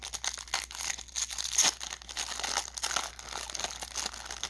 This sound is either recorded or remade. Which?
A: recorded